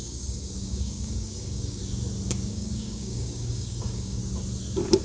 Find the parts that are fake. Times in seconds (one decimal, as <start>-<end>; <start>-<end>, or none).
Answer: 0.0-1.8; 2.5-4.2